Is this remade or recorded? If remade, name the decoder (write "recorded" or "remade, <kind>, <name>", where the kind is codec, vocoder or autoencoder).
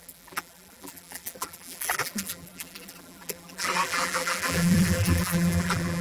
remade, vocoder, BigVGAN v2